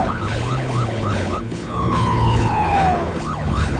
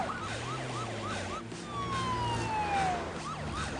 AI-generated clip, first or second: first